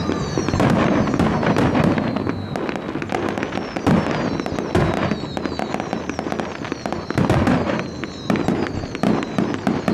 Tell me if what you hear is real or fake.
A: real